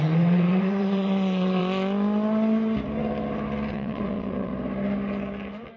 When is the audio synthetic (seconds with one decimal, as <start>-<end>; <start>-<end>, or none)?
0.0-1.6; 3.7-4.5